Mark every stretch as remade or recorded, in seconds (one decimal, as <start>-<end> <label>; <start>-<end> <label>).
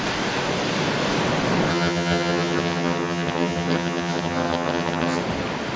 0.0-1.7 recorded; 1.7-5.2 remade; 5.2-5.8 recorded